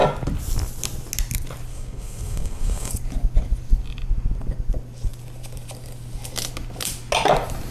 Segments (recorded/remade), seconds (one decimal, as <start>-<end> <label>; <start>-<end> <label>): 0.0-1.7 recorded; 1.7-2.9 remade; 2.9-7.7 recorded